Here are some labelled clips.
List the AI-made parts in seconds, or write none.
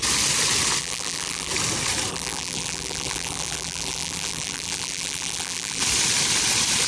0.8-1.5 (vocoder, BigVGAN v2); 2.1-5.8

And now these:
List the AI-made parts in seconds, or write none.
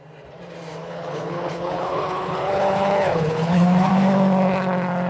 0.8-3.9 (codec, HILCodec)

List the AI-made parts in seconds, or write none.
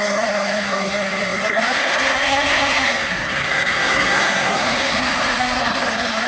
0.0-6.3 (codec, SNAC)